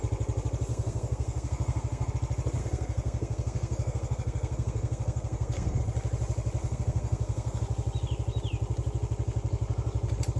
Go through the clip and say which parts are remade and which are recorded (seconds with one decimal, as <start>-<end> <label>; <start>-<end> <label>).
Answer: 0.0-0.7 recorded; 0.7-2.1 remade; 2.1-2.6 recorded; 2.6-5.8 remade; 5.8-6.6 recorded; 6.6-7.6 remade; 7.6-10.4 recorded